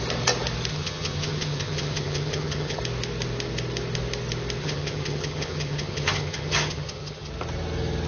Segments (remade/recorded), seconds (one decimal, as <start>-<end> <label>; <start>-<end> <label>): 0.0-0.7 recorded; 0.7-2.8 remade; 2.8-4.6 recorded; 4.6-7.3 remade; 7.3-8.1 recorded